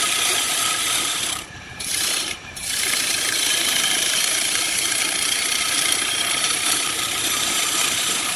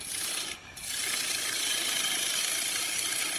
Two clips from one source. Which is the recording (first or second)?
second